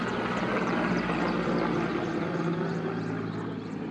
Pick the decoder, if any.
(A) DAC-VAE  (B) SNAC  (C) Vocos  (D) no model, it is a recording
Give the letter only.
D